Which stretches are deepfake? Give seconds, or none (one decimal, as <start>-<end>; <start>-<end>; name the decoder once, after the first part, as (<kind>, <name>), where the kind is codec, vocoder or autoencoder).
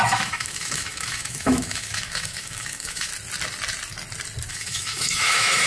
0.0-3.1 (autoencoder, DAC-VAE); 4.5-5.7